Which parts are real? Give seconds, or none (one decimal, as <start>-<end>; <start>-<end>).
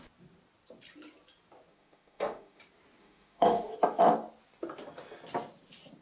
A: 0.0-1.7; 2.6-3.0; 3.7-6.0